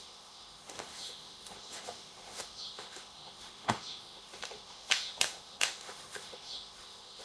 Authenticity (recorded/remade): remade